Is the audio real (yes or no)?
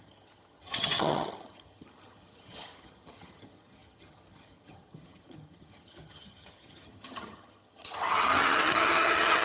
no